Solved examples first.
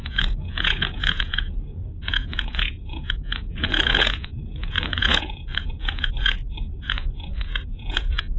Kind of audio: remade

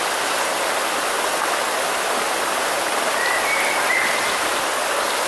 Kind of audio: recorded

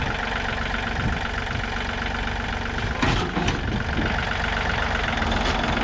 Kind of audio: recorded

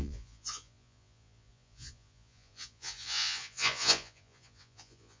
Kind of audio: remade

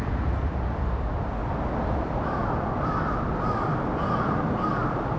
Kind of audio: recorded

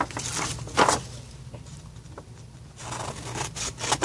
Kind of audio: recorded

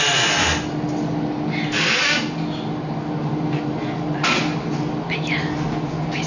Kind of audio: recorded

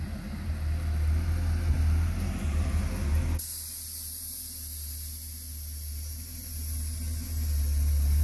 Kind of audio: recorded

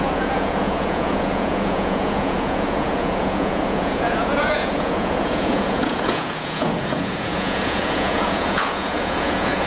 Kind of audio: remade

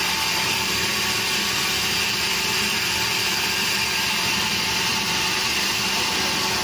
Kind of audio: remade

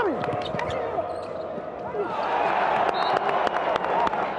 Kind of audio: recorded